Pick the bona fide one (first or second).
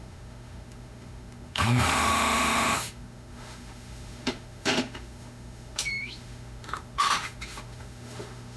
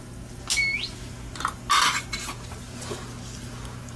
second